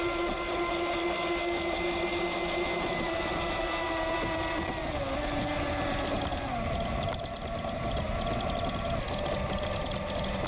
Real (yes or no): yes